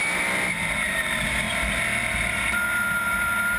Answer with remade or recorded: recorded